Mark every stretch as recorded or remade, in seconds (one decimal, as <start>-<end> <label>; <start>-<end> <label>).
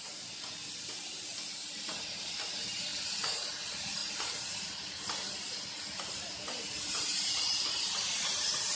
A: 0.0-2.9 remade; 2.9-3.5 recorded; 3.5-4.0 remade; 4.0-6.0 recorded; 6.0-8.8 remade